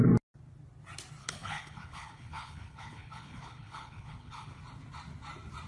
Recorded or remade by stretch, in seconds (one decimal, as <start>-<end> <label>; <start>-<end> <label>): 0.0-1.2 recorded; 1.2-4.6 remade; 4.6-5.7 recorded